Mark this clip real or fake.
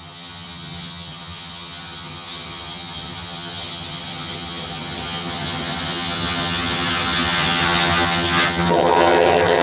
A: fake